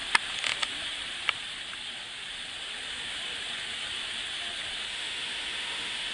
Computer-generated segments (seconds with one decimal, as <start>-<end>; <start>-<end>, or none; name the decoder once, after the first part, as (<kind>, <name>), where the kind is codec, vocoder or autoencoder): 4.9-6.1 (autoencoder, DAC-VAE)